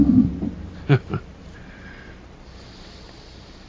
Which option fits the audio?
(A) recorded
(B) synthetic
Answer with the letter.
A